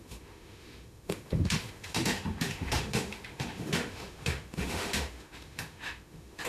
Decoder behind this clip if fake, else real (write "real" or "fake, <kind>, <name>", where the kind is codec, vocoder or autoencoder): fake, autoencoder, DAC-VAE